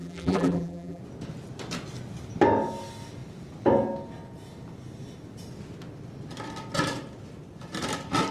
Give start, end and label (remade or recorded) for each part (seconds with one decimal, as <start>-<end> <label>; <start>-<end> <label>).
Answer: 0.0-1.0 remade; 1.0-8.3 recorded